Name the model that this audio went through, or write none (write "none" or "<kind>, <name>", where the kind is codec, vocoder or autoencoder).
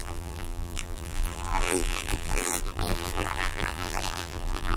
vocoder, BigVGAN v2